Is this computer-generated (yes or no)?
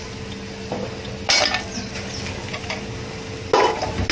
no